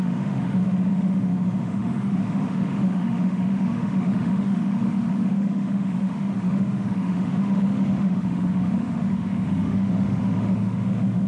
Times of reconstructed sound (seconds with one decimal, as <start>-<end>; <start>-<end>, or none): 0.0-11.3